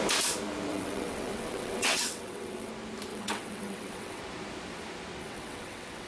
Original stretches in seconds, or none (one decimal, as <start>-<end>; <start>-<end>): 0.0-0.7; 2.7-3.1; 4.2-5.2